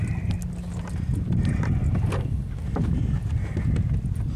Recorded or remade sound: recorded